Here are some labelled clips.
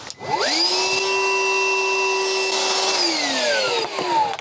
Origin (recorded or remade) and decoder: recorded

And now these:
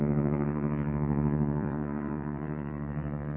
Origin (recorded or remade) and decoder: remade, vocoder, Vocos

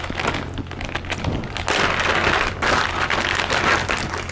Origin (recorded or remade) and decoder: recorded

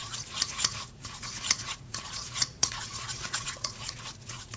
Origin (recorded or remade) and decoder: remade, vocoder, Vocos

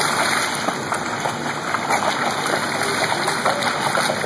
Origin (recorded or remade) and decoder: recorded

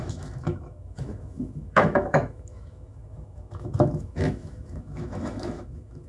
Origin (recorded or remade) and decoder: remade, autoencoder, DAC-VAE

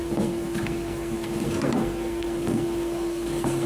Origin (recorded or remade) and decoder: remade, codec, SNAC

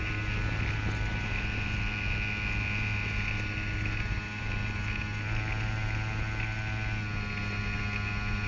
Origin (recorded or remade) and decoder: recorded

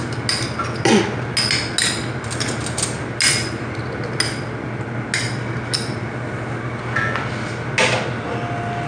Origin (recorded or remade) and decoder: recorded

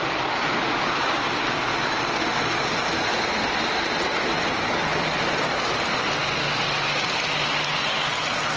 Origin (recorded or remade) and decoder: recorded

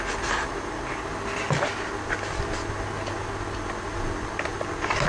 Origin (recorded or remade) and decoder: recorded